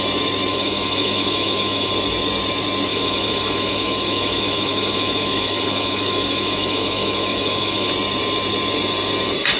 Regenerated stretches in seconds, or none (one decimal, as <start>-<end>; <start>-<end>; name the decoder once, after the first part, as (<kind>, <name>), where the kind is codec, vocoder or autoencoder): 0.5-1.9 (autoencoder, DAC-VAE); 2.9-7.9